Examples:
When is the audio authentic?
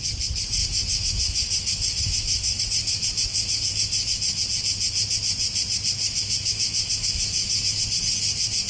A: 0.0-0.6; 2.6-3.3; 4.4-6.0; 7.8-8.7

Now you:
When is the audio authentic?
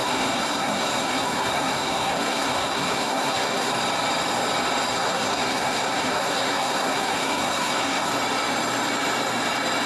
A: 3.7-4.9; 8.1-9.9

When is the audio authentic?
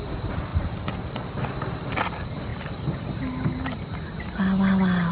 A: 0.0-0.5; 1.3-5.1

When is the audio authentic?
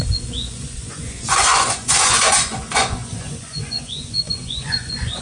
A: none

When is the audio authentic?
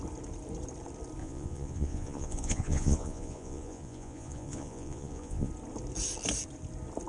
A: 0.0-1.2; 5.5-7.1